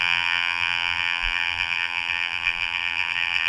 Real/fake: fake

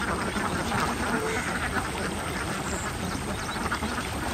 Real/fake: real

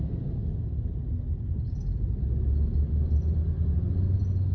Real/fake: real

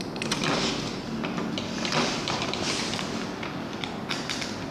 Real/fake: real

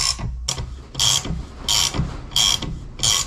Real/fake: real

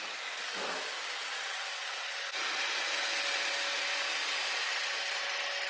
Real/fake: real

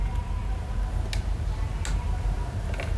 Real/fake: real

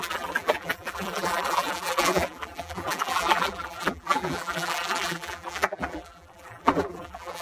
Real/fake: fake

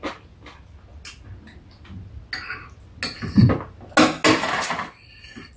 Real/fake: real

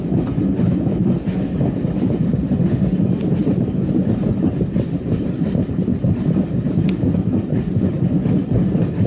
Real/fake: real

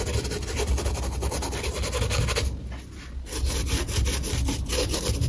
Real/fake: real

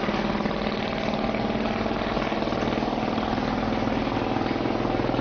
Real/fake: real